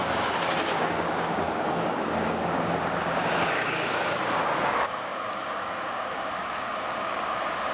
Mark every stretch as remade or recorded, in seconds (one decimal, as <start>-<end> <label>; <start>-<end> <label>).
0.0-7.7 remade